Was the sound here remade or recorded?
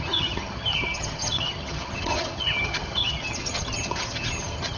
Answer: remade